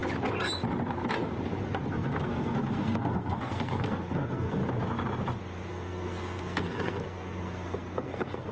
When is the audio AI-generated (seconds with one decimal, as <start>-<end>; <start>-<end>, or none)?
1.9-4.6; 5.7-8.5